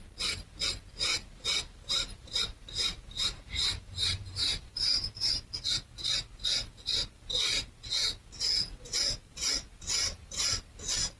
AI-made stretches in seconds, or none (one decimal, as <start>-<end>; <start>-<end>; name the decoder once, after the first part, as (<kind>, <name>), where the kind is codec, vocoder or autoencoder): 1.1-5.5 (vocoder, BigVGAN v2)